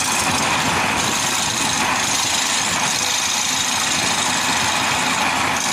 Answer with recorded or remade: recorded